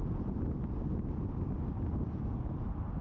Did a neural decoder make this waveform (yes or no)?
no